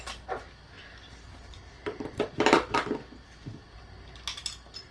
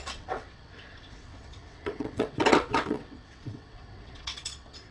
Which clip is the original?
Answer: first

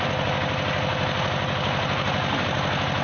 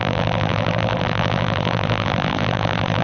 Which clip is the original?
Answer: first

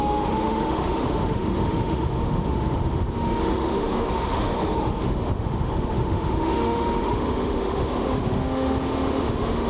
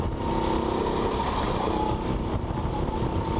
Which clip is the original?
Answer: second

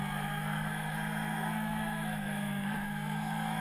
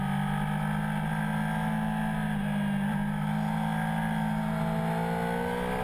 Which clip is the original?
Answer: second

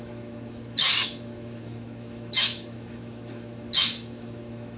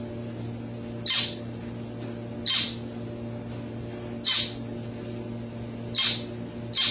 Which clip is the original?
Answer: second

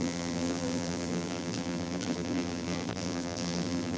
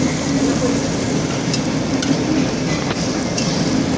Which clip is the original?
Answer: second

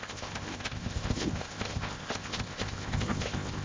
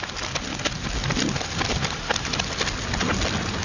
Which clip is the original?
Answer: second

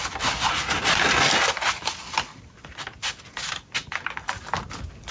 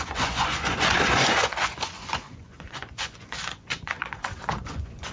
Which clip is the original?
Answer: first